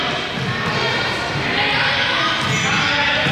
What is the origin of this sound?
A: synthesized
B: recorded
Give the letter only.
B